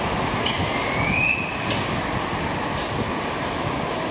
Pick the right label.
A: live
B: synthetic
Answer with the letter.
A